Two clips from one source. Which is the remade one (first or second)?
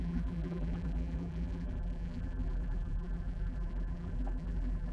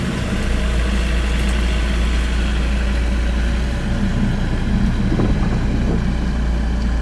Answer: first